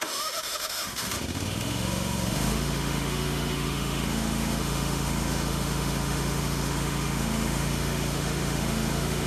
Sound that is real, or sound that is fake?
fake